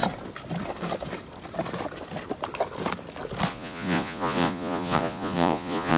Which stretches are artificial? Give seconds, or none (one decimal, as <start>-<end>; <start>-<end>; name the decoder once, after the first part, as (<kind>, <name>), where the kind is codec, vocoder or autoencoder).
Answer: 3.5-6.0 (vocoder, Vocos)